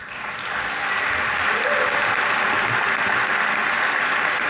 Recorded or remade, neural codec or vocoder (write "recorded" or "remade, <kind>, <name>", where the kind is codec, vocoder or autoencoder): recorded